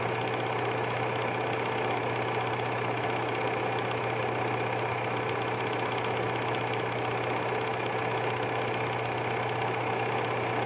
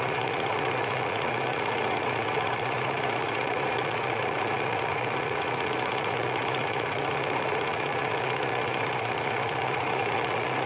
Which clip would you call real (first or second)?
first